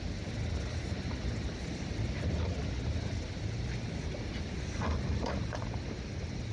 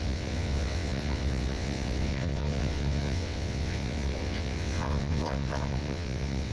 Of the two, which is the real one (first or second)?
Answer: first